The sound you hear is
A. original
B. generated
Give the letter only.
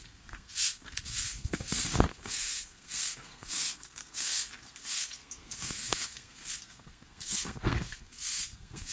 B